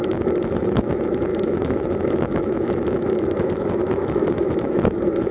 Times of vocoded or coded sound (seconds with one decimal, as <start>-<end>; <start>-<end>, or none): 0.0-5.3